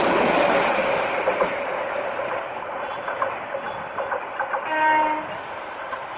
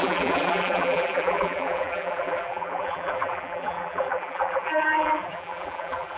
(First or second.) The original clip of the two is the first